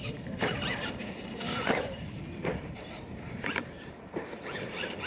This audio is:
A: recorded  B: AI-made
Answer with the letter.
B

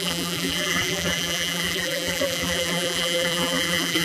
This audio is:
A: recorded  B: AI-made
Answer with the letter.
B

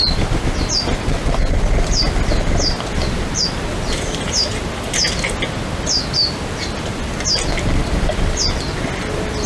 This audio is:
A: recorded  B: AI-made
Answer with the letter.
A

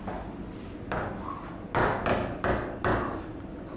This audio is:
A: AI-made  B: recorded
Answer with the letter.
B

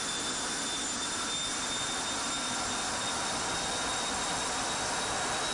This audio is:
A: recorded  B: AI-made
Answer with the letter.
A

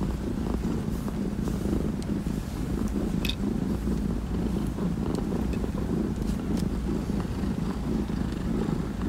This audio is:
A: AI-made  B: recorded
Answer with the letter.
B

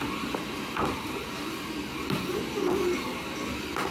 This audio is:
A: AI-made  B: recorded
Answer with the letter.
B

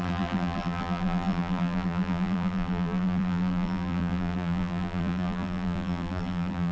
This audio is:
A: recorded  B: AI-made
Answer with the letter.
B